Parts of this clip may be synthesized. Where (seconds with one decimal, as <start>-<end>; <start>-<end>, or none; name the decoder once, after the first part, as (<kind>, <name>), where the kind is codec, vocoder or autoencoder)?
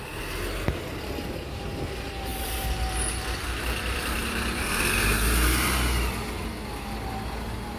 2.3-4.8 (vocoder, BigVGAN v2)